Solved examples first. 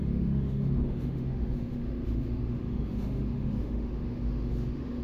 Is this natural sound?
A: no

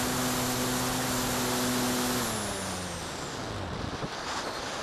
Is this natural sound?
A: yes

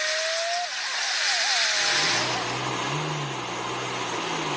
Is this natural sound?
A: yes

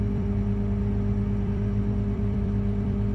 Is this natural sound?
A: no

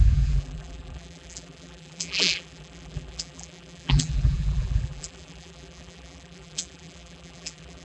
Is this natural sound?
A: no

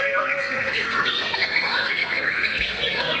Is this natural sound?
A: no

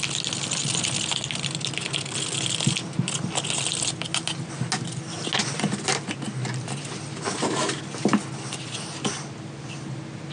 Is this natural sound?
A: yes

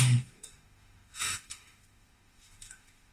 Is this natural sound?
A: no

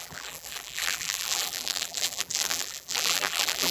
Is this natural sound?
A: no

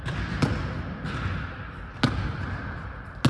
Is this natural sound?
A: yes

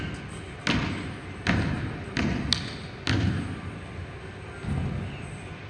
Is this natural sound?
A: yes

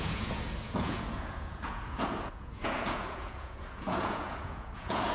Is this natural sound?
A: no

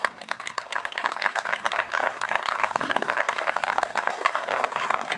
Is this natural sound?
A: no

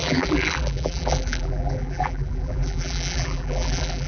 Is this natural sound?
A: no